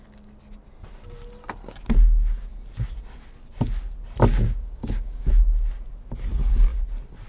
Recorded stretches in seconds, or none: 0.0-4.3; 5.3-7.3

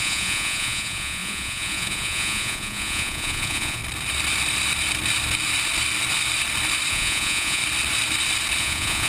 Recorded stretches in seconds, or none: 3.8-6.9; 7.6-8.6

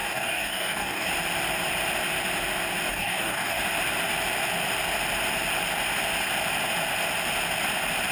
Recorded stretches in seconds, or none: 1.1-2.9; 3.6-8.1

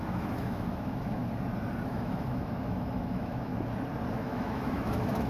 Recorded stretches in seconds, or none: 1.2-1.9; 3.5-4.1

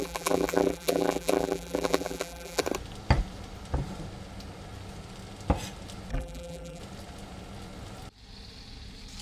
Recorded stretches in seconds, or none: 2.6-6.1; 6.8-9.2